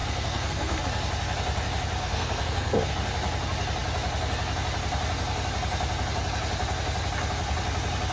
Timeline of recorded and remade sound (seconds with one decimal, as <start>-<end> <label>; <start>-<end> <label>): 0.0-0.8 remade; 0.8-2.0 recorded; 2.0-2.9 remade; 2.9-8.1 recorded